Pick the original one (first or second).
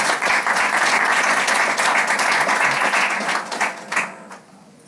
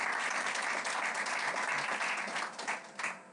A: second